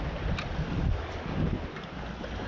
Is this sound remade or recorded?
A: recorded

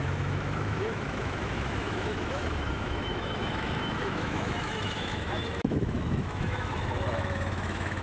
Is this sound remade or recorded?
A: remade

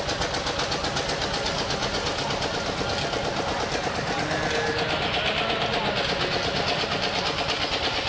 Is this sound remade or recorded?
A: recorded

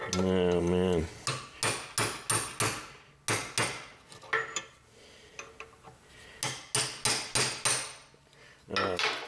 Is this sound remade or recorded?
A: recorded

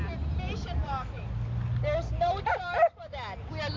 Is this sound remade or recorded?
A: recorded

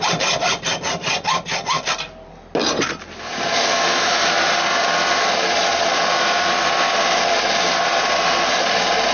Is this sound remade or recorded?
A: recorded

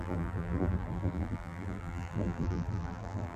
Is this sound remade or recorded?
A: remade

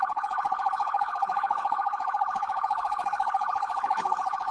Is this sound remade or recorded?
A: remade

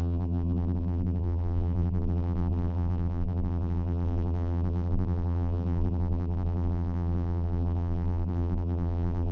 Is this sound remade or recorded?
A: remade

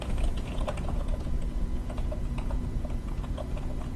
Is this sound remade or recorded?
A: remade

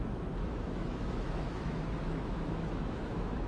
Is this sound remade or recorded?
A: remade